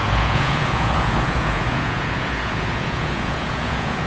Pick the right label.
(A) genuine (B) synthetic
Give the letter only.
B